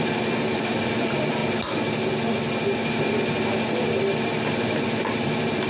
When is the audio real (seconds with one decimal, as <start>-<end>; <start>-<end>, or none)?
1.4-4.8

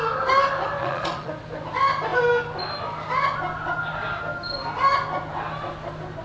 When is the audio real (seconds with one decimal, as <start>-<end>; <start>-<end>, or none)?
0.0-0.8; 1.3-6.2

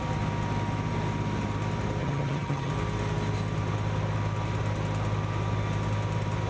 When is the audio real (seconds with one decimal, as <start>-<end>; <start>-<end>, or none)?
0.0-2.0; 2.7-6.5

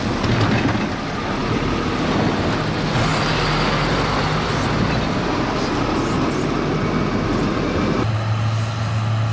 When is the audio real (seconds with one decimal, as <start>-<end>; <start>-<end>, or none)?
0.0-9.3

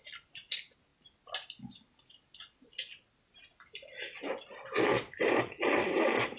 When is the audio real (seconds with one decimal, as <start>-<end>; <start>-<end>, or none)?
0.0-6.4

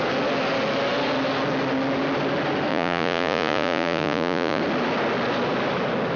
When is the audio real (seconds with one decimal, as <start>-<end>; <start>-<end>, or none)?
0.0-2.7; 4.6-6.2